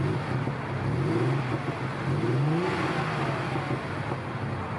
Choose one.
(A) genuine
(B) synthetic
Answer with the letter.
A